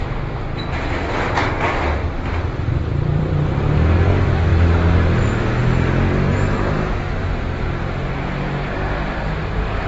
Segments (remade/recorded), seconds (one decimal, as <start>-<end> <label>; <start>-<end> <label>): 0.0-2.0 recorded; 2.0-3.2 remade; 3.2-9.9 recorded